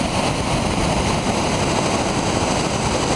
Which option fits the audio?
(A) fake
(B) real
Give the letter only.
B